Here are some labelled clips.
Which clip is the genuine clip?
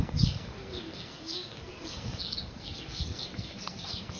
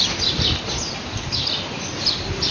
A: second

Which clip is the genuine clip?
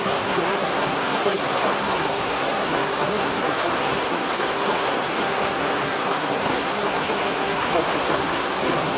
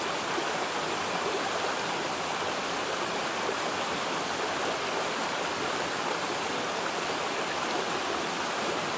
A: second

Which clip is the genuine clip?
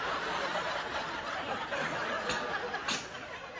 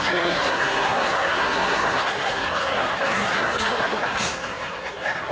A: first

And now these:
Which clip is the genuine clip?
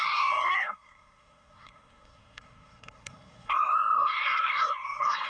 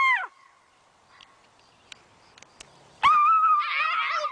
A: second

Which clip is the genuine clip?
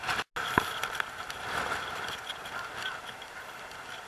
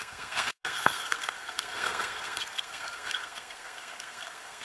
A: first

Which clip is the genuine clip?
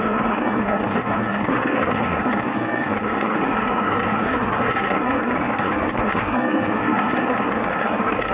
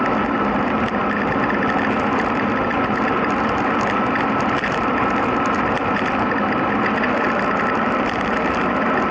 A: second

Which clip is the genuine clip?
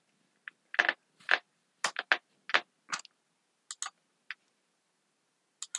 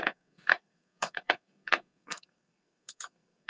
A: first